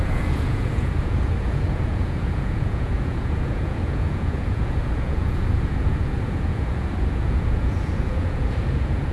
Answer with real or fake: fake